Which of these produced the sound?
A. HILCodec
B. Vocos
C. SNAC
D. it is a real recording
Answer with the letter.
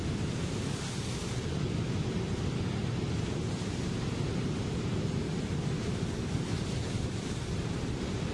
D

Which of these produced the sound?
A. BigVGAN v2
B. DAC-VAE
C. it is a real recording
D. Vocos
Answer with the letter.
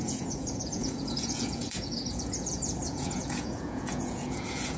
D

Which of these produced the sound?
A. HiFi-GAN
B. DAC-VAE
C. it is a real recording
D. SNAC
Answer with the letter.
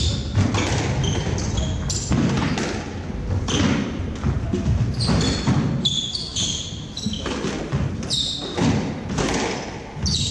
C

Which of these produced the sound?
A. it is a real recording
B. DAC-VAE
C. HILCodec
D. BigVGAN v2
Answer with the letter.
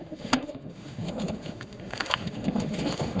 B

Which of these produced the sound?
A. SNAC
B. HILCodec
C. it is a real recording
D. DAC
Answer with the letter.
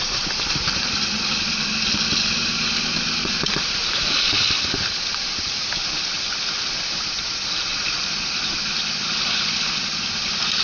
C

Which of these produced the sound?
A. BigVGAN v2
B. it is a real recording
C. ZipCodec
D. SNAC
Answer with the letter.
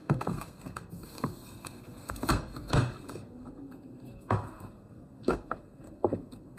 D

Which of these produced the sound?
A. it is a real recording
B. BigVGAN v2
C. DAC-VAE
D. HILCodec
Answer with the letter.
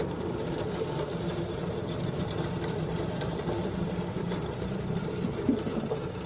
B